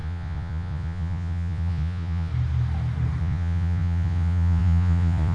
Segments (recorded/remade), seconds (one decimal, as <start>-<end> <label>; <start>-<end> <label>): 0.0-2.3 remade; 2.3-3.2 recorded; 3.2-5.3 remade